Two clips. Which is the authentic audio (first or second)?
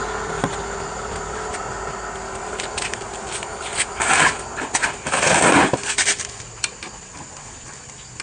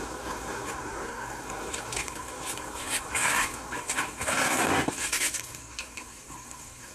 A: first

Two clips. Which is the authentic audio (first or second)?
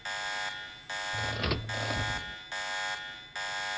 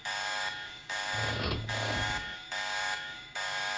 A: first